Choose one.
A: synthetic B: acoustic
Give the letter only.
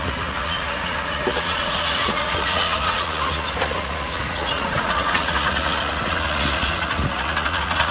A